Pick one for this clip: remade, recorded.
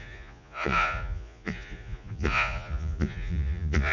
remade